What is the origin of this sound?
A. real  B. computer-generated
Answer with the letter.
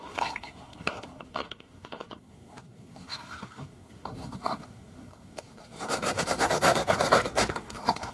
B